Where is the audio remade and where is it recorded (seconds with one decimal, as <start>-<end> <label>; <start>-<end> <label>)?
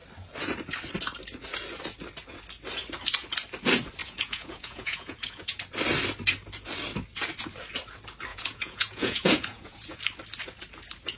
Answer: 0.0-4.0 recorded; 4.0-5.6 remade; 5.6-8.3 recorded; 8.3-10.0 remade; 10.0-11.2 recorded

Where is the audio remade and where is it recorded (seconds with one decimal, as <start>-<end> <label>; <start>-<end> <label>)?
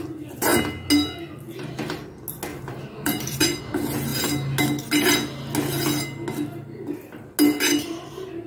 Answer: 0.0-2.5 recorded; 2.5-3.6 remade; 3.6-8.5 recorded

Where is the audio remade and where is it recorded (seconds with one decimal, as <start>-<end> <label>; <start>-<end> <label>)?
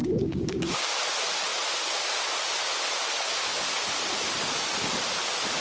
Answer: 0.0-0.9 remade; 0.9-5.6 recorded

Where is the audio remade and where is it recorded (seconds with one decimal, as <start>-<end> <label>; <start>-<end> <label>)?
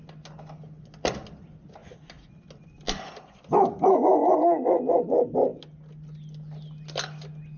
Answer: 0.0-7.6 recorded